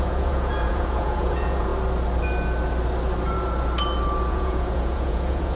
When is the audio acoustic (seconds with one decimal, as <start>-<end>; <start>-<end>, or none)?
1.7-4.3